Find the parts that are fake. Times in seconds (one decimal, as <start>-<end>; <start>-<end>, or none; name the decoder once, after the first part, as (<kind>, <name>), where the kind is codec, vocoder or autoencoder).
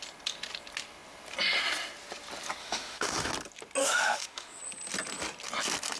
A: 2.6-3.3 (autoencoder, DAC-VAE); 3.8-4.6